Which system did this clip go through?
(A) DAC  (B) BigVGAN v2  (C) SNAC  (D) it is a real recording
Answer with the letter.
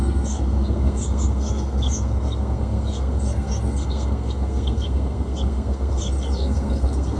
C